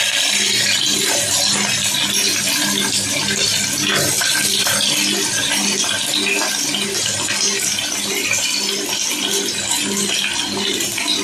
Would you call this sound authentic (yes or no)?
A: yes